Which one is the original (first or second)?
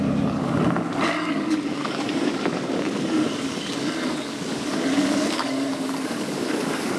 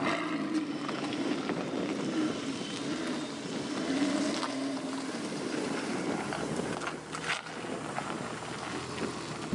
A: second